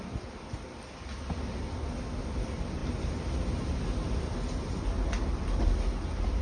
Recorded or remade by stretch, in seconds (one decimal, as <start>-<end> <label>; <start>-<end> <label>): 0.0-6.4 recorded